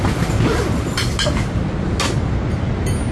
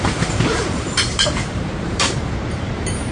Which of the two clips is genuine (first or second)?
first